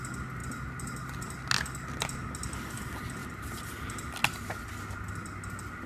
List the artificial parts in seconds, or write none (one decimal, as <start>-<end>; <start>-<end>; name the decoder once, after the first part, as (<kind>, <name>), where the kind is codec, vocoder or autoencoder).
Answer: none